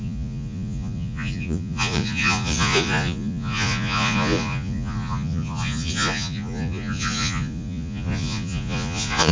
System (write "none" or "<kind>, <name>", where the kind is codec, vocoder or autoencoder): vocoder, Vocos